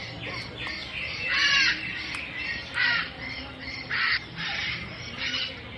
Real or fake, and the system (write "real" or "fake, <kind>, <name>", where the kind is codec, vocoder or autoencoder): real